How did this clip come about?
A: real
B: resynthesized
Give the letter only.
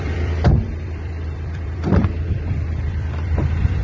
B